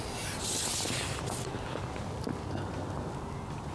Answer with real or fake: real